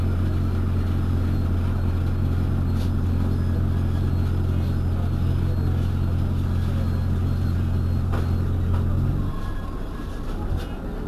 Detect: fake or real real